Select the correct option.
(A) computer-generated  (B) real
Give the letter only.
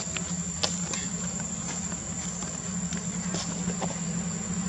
B